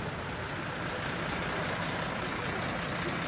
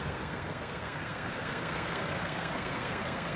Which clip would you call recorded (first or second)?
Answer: first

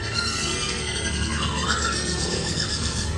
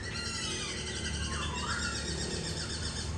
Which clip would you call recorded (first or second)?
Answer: second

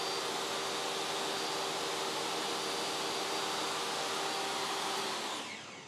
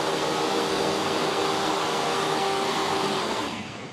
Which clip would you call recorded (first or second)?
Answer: first